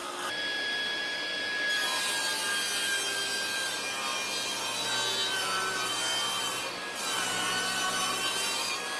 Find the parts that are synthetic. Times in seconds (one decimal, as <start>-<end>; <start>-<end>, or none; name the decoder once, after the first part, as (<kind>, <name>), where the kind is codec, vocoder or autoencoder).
none